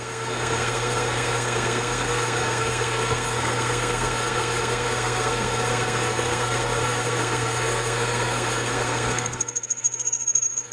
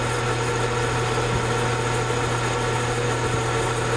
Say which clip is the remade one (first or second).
first